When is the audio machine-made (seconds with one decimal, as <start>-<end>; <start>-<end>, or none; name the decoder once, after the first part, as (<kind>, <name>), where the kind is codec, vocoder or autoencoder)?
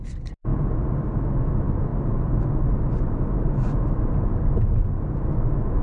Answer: none